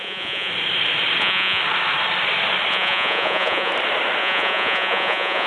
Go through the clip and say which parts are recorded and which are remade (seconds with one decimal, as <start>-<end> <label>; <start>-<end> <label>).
0.0-0.5 remade; 0.5-1.2 recorded; 1.2-1.6 remade; 1.6-2.7 recorded; 2.7-3.7 remade; 3.7-4.2 recorded; 4.2-5.5 remade